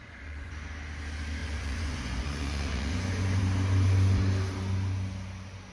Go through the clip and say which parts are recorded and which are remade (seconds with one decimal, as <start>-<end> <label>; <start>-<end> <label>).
0.0-0.5 remade; 0.5-1.4 recorded; 1.4-3.4 remade; 3.4-5.7 recorded